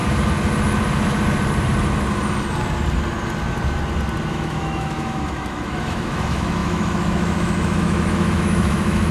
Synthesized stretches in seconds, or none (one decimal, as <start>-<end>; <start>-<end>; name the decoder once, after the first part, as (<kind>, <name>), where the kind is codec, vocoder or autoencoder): 4.3-9.1 (autoencoder, DAC-VAE)